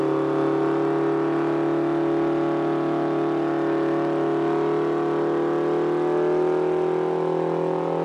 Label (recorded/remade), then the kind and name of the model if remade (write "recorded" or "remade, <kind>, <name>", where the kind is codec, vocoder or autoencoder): recorded